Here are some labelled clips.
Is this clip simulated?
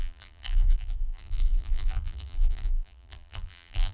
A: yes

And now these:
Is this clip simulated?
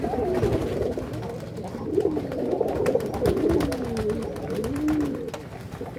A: no